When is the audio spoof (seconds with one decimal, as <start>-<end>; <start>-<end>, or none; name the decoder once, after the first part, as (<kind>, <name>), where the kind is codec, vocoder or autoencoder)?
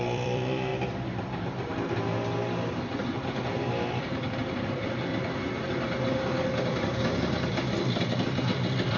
0.0-0.7 (vocoder, BigVGAN v2); 4.0-5.1; 7.2-9.0